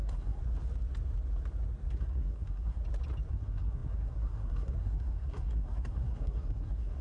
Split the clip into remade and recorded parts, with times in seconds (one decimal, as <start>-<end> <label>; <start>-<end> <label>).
0.0-0.4 remade; 0.4-1.9 recorded; 1.9-2.8 remade; 2.8-3.3 recorded; 3.3-7.0 remade